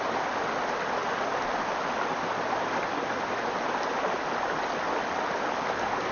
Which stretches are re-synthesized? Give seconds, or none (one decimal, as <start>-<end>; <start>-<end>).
none